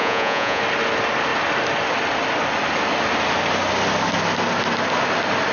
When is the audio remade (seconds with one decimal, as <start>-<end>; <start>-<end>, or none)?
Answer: 0.0-0.6